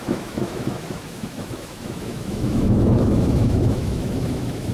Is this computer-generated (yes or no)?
yes